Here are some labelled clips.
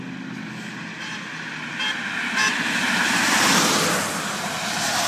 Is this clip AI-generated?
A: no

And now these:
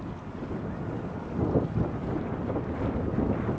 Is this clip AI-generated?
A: no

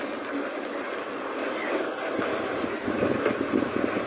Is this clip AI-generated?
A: no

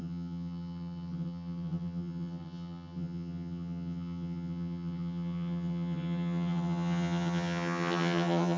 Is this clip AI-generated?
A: yes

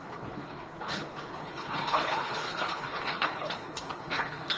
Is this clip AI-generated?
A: yes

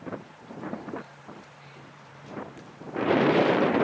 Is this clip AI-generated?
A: yes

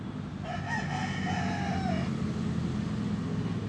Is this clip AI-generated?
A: no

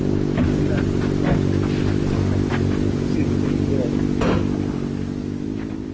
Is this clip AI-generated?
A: no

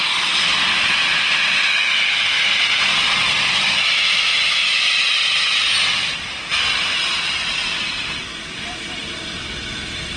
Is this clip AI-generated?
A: no